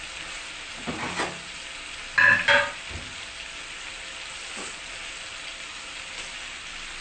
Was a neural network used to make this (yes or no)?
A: no